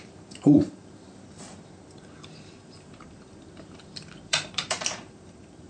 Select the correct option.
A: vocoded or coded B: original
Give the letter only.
A